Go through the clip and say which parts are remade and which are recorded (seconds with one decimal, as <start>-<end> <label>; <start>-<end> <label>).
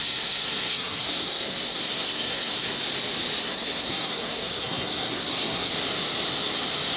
0.0-2.8 remade; 2.8-3.4 recorded; 3.4-5.7 remade; 5.7-7.0 recorded